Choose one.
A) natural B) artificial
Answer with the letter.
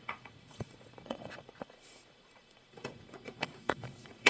B